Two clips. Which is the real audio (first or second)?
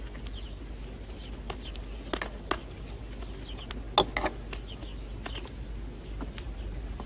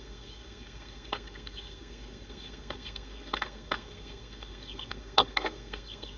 first